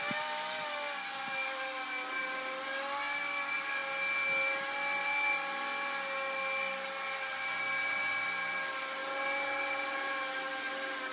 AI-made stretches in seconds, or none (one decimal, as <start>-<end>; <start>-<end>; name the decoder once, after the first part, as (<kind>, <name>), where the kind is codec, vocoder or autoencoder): none